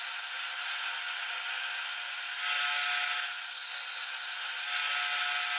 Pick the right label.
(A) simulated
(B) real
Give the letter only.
B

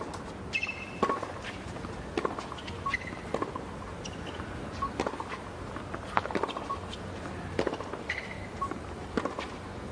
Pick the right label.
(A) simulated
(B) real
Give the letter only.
B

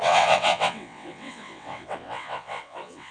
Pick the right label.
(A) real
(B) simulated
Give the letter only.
B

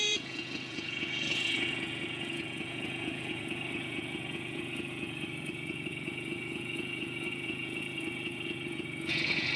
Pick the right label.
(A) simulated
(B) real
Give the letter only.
A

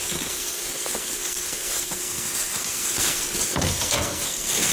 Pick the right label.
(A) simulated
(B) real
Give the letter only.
A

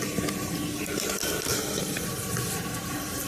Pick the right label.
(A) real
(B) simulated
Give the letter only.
A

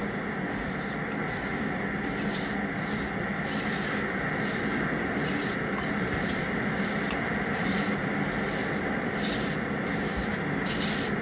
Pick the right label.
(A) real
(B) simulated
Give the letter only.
A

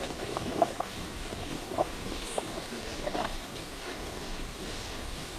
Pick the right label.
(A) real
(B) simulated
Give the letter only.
B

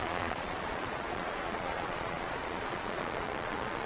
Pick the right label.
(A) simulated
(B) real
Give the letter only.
A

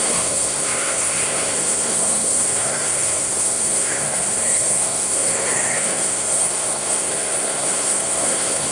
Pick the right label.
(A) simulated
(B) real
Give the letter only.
A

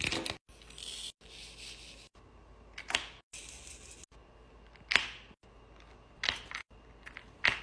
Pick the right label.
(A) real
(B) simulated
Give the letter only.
A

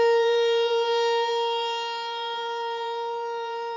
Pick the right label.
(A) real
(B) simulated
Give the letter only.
B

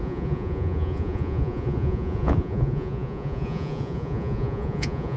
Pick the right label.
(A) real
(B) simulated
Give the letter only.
B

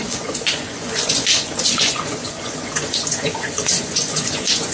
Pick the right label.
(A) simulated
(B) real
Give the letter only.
A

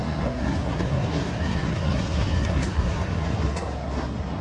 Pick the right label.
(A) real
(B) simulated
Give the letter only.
B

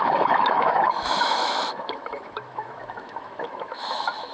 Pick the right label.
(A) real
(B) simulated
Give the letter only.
B